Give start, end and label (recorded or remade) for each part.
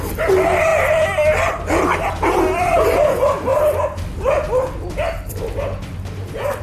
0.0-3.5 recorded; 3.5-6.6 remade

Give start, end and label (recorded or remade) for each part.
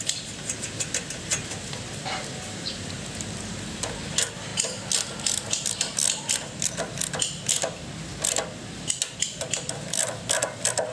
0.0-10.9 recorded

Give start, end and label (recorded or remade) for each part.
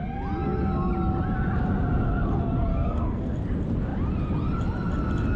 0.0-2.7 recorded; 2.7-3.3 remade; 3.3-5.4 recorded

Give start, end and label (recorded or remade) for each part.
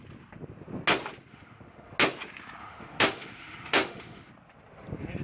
0.0-1.3 recorded; 1.3-1.9 remade; 1.9-2.6 recorded; 2.6-4.3 remade; 4.3-5.2 recorded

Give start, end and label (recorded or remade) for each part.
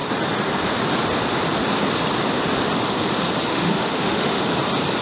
0.0-3.5 recorded; 3.5-4.4 remade; 4.4-5.0 recorded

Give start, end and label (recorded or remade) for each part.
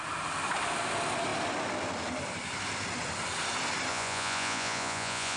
0.0-3.9 recorded; 3.9-5.4 remade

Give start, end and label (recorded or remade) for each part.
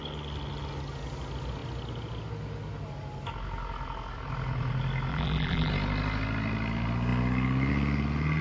0.0-5.1 recorded; 5.1-5.7 remade; 5.7-8.4 recorded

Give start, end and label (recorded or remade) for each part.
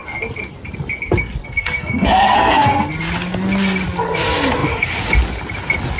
0.0-1.4 recorded; 1.4-2.9 remade; 2.9-6.0 recorded